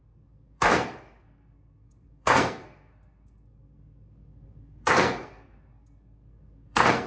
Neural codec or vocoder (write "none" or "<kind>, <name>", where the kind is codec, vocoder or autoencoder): codec, SNAC